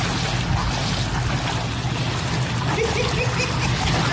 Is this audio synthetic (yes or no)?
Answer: no